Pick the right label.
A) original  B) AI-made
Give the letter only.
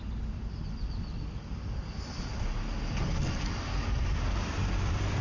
A